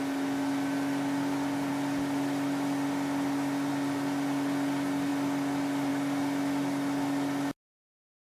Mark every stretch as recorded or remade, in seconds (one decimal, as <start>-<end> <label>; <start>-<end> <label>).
0.0-8.3 recorded